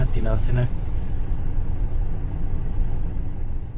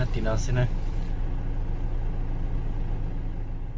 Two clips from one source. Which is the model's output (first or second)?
first